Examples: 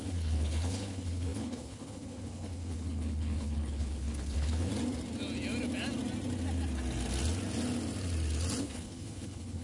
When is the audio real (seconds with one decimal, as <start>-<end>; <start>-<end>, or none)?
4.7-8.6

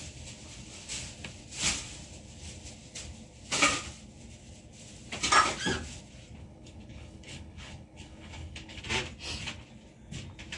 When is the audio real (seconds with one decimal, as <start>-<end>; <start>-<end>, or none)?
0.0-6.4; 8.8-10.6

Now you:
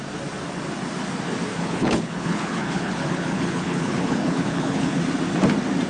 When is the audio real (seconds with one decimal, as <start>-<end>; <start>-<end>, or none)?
0.0-1.5; 5.0-5.9

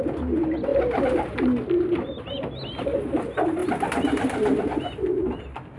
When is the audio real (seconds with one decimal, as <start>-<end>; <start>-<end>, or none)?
0.0-5.8